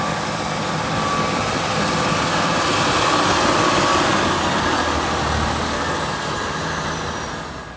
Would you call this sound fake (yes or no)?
no